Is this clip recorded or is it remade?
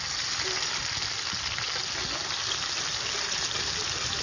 recorded